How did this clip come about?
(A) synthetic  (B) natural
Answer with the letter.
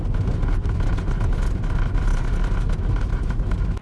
B